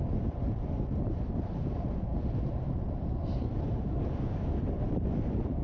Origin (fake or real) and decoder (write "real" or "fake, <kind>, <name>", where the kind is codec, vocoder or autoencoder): fake, vocoder, BigVGAN v2